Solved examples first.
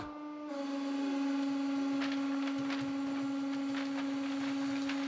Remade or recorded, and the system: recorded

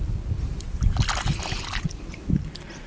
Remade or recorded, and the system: recorded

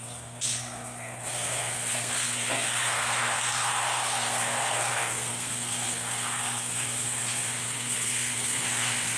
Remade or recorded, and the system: remade, codec, SNAC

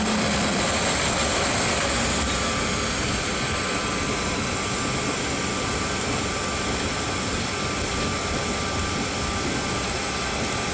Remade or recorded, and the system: recorded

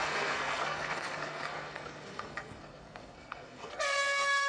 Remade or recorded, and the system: remade, codec, SNAC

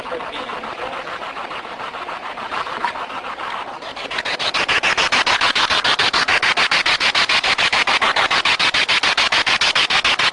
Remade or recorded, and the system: recorded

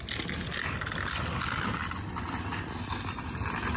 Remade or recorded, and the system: recorded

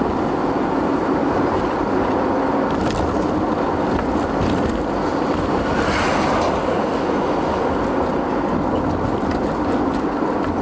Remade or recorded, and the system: recorded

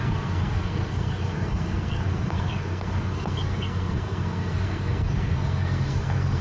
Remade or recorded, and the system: remade, codec, SNAC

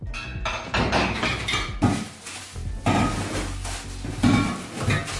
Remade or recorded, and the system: recorded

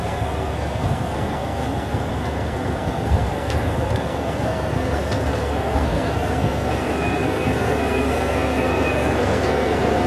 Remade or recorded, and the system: remade, codec, SNAC